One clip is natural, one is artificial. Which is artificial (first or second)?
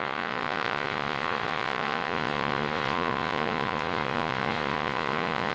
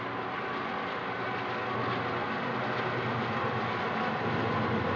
first